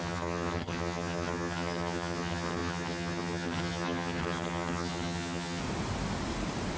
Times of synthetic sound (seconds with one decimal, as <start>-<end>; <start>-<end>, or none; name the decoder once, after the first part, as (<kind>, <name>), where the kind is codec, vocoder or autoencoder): 0.0-5.6 (vocoder, HiFi-GAN)